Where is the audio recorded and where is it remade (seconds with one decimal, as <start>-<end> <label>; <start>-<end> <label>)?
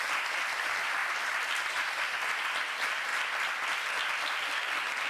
0.0-5.1 recorded